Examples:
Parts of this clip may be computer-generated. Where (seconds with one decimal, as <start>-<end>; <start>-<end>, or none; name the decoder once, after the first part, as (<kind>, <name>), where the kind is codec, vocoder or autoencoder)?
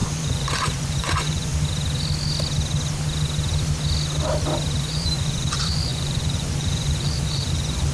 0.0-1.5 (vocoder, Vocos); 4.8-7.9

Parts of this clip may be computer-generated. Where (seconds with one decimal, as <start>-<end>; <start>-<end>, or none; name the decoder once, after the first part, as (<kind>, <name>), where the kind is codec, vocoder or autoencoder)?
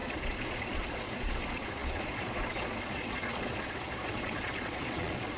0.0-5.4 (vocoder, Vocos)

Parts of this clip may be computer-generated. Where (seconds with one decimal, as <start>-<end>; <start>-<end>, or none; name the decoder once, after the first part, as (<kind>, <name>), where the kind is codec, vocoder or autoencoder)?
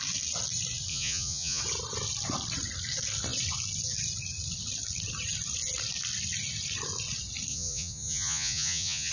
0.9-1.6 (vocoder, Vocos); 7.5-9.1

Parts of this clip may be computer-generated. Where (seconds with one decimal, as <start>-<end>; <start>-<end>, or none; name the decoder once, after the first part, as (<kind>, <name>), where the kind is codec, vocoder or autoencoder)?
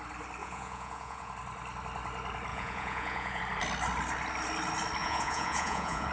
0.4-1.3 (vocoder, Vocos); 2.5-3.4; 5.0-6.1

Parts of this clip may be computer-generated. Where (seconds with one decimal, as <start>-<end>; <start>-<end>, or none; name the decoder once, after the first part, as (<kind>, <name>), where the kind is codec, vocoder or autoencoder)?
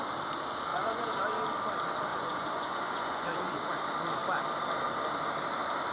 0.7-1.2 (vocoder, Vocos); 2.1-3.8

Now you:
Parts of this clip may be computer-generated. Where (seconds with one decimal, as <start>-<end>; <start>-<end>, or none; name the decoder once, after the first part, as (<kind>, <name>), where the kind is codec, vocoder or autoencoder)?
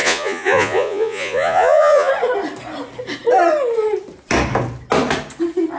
0.0-2.1 (vocoder, Vocos)